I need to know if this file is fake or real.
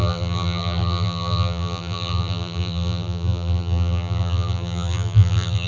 fake